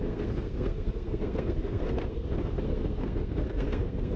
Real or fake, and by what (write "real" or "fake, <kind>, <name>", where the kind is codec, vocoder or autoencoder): fake, codec, SNAC